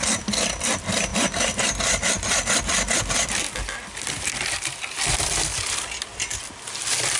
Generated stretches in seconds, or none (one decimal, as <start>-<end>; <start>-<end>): none